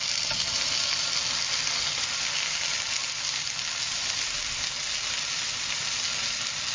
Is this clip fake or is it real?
real